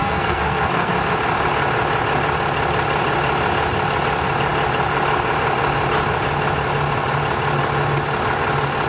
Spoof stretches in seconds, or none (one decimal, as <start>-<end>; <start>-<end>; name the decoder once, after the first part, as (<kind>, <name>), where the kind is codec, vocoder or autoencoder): 0.0-0.9 (codec, SNAC)